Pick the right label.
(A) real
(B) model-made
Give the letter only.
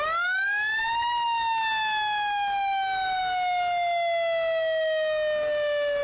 A